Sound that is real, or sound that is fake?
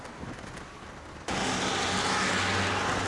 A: real